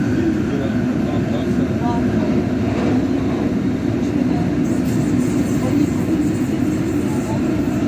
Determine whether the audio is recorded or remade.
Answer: recorded